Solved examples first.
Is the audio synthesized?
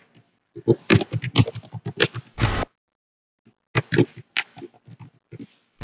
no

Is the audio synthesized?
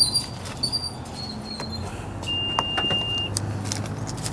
no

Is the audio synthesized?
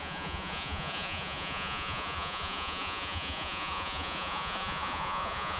yes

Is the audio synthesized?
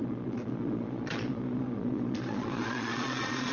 yes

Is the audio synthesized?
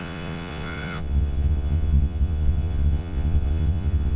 yes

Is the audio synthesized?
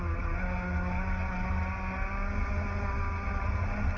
no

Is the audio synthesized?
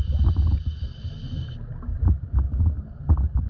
no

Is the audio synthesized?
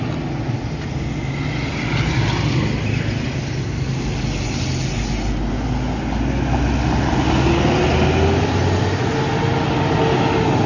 no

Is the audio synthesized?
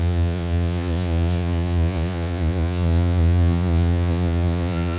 yes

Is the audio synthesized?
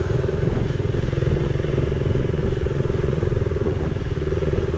yes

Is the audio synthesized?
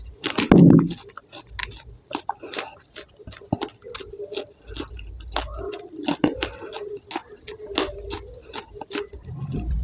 no